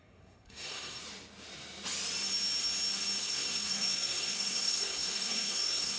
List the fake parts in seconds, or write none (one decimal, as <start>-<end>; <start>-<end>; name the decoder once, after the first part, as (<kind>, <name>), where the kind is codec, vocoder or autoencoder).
0.0-1.0 (codec, SNAC); 3.2-6.0